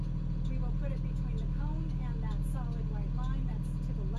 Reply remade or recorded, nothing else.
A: recorded